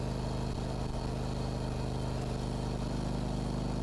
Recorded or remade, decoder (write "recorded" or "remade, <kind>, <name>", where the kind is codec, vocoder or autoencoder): recorded